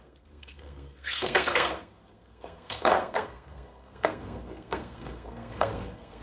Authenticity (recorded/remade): remade